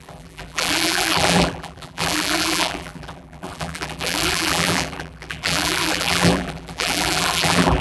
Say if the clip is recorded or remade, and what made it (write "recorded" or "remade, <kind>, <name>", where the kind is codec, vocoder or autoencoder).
remade, vocoder, BigVGAN v2